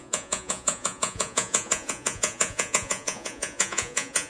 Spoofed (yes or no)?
yes